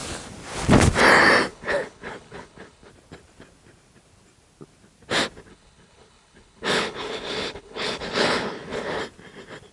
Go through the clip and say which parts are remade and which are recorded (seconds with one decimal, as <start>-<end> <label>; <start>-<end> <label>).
0.0-1.5 recorded; 1.5-2.9 remade; 2.9-5.5 recorded; 5.5-9.0 remade; 9.0-9.7 recorded